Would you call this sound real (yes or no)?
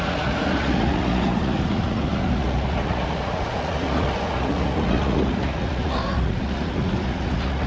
no